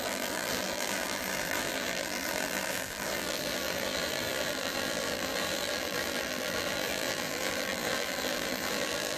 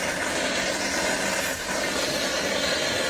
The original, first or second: second